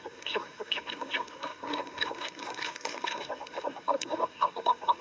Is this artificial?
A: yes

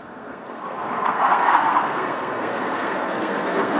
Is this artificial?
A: yes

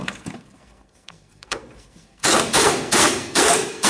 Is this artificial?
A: yes